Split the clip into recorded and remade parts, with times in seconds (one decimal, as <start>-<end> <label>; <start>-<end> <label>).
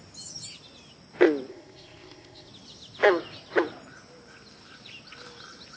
0.0-1.5 recorded; 1.5-2.5 remade; 2.5-5.8 recorded